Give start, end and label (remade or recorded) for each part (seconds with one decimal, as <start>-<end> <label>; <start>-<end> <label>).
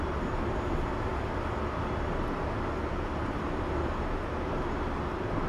0.0-5.5 recorded